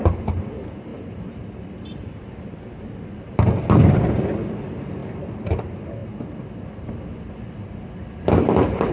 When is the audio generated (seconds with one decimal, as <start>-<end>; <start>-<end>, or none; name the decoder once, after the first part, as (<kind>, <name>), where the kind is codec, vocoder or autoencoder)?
0.9-3.2 (vocoder, BigVGAN v2); 5.0-5.6; 6.0-7.3